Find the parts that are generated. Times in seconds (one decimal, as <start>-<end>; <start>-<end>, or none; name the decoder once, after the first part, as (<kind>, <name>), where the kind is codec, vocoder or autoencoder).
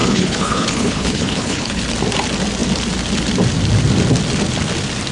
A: 0.0-1.8 (codec, HILCodec)